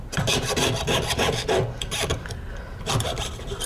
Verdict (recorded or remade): remade